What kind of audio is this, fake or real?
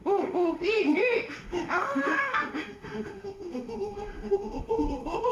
fake